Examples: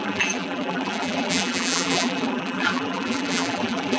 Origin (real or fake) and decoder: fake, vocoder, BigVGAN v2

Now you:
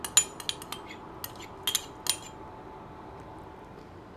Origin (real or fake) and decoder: real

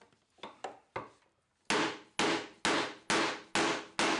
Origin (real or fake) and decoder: real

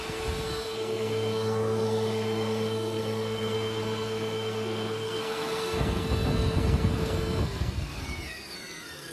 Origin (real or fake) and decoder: fake, codec, SNAC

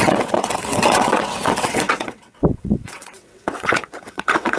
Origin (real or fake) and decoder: fake, vocoder, WaveNeXt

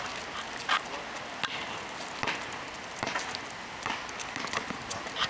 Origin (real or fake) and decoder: real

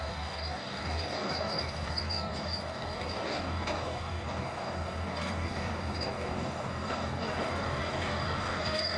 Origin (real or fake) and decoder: fake, codec, DAC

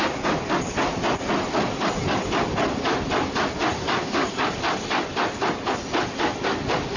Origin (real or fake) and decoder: real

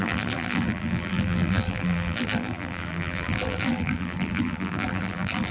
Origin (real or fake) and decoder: fake, vocoder, BigVGAN v2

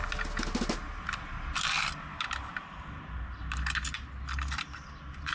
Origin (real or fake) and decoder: real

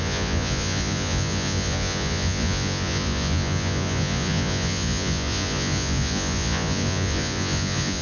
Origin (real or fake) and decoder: fake, vocoder, Vocos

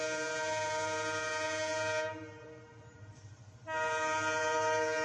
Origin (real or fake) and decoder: fake, vocoder, BigVGAN v2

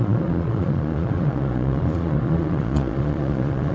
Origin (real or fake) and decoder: fake, vocoder, Vocos